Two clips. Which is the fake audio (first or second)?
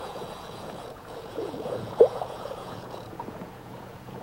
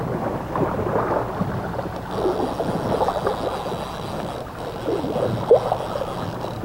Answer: first